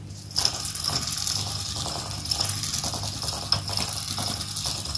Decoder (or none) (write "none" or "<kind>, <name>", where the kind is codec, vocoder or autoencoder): none